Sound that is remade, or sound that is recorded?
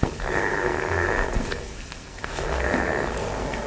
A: remade